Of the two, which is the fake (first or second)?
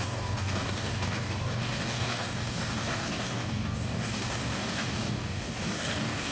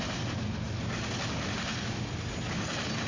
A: first